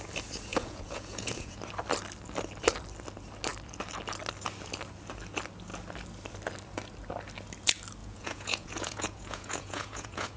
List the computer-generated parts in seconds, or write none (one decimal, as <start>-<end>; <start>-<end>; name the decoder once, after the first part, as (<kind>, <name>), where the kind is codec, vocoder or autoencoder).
0.5-1.6 (vocoder, Vocos); 8.0-10.4